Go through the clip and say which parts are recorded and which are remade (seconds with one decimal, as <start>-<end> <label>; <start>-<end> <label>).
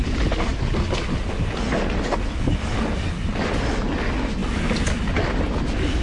0.0-6.0 recorded